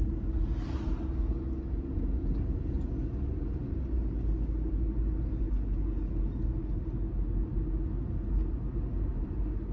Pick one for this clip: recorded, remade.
recorded